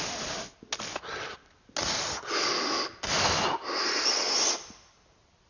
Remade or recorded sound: recorded